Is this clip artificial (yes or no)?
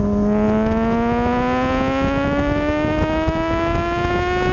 no